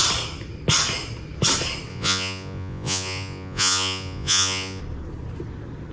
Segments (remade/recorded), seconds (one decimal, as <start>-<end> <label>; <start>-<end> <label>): 0.0-1.9 recorded; 1.9-4.8 remade; 4.8-5.9 recorded